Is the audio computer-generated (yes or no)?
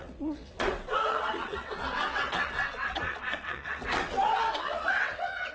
yes